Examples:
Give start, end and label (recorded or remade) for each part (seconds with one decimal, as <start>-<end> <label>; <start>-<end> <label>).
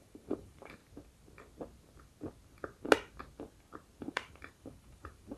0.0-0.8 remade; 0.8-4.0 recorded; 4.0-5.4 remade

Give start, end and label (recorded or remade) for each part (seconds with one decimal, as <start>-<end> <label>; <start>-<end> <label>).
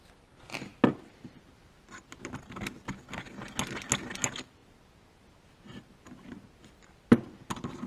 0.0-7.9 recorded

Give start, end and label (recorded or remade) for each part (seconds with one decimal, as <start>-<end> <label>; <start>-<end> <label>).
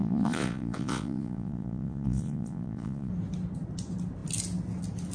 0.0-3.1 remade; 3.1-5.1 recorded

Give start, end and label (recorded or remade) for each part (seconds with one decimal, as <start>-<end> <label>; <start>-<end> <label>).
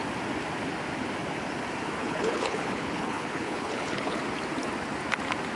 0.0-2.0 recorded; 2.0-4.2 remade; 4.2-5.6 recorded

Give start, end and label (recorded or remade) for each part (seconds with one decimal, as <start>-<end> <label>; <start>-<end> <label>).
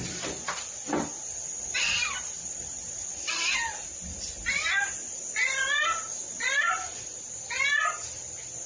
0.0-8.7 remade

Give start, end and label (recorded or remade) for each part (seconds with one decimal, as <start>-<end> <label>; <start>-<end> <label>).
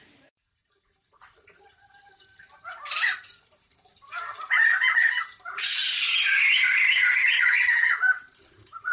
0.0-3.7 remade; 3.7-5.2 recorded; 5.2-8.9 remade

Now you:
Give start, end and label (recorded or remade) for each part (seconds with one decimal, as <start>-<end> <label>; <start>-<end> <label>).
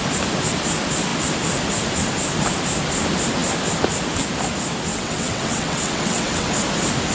0.0-4.9 recorded; 4.9-6.5 remade; 6.5-7.1 recorded